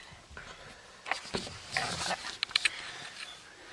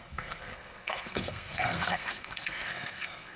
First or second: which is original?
first